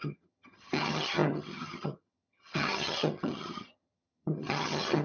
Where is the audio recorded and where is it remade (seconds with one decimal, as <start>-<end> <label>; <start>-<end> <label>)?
0.0-5.0 remade